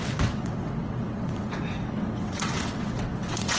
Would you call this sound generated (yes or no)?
yes